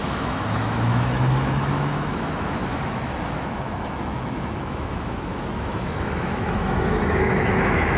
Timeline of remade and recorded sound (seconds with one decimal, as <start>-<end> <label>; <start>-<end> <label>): 0.0-8.0 remade